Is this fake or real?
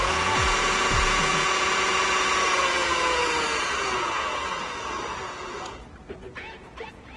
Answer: fake